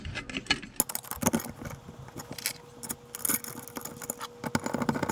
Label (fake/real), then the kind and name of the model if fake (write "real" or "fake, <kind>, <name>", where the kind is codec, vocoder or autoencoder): real